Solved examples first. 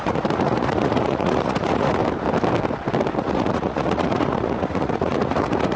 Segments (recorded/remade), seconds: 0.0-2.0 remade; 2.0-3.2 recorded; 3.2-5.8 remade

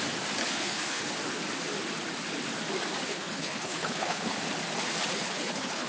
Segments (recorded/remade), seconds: 0.0-0.4 recorded; 0.4-1.1 remade; 1.1-3.1 recorded; 3.1-4.2 remade; 4.2-5.1 recorded; 5.1-5.9 remade

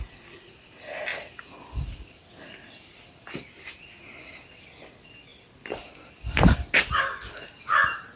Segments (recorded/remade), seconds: 0.0-5.3 recorded; 5.3-6.1 remade; 6.1-8.2 recorded

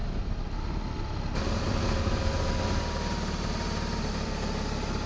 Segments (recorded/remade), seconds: 0.0-2.3 recorded; 2.3-5.1 remade

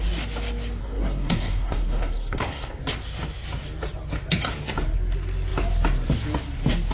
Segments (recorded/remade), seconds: 0.0-0.8 recorded; 0.8-2.8 remade; 2.8-6.9 recorded